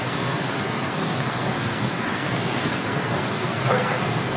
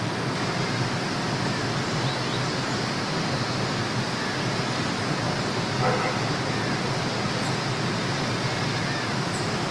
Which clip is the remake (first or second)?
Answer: first